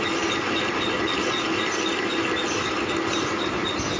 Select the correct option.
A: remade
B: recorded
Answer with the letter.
B